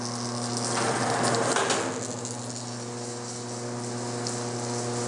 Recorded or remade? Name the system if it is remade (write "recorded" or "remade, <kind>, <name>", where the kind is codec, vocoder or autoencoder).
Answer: recorded